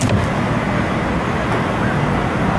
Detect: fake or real real